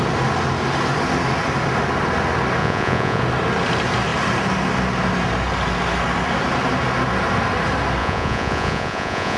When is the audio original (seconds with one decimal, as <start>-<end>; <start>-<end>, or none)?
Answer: 0.0-2.6; 3.2-8.0